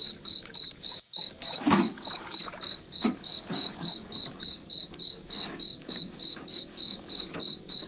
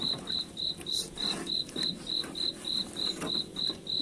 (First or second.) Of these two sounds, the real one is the second